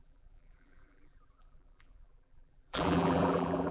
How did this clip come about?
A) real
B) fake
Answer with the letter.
B